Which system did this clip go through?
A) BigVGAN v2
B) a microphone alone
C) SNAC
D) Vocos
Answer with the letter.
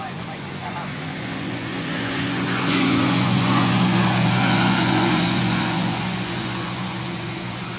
D